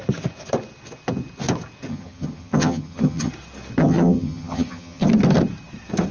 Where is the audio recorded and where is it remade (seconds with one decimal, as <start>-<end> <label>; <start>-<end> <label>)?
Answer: 0.0-1.9 recorded; 1.9-3.3 remade; 3.3-3.8 recorded; 3.8-5.1 remade; 5.1-6.1 recorded